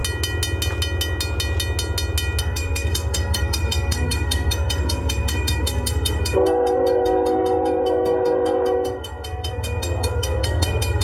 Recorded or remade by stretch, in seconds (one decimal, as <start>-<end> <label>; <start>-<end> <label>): 0.0-2.4 recorded; 2.4-11.0 remade